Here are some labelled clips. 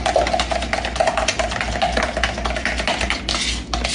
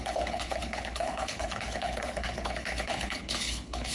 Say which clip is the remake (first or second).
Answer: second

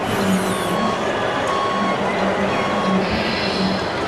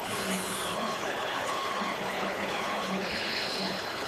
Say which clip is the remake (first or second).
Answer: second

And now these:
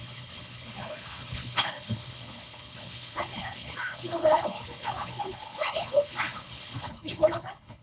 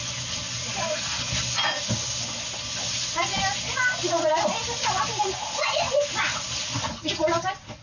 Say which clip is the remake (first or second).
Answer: first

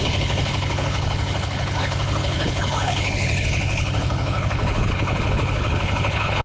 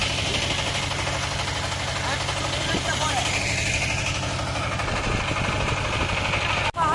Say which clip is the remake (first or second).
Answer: first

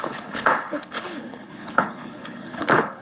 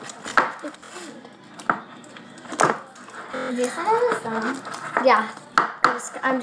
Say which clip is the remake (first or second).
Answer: first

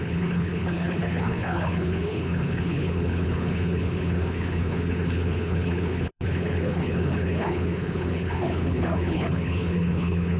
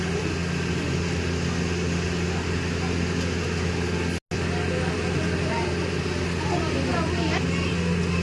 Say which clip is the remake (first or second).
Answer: first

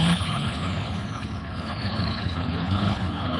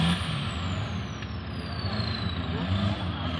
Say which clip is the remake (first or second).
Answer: first